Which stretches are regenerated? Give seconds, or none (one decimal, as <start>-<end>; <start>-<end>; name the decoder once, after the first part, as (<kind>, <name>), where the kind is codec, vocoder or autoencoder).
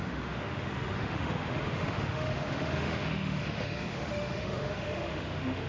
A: 0.0-5.7 (autoencoder, DAC-VAE)